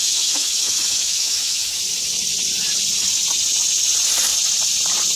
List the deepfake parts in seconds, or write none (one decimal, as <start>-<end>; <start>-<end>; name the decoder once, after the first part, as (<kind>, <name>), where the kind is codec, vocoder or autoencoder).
0.0-1.8 (autoencoder, DAC-VAE)